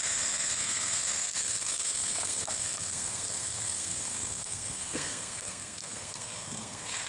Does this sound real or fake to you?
fake